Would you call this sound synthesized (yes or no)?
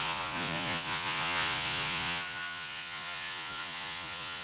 yes